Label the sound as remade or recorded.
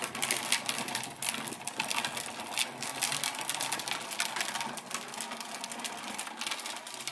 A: recorded